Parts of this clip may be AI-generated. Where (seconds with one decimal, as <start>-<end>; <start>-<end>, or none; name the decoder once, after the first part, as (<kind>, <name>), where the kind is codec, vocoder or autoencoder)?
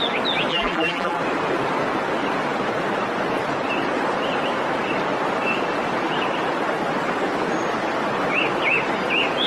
0.5-1.2 (vocoder, BigVGAN v2)